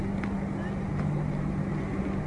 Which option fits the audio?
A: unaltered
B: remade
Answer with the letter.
A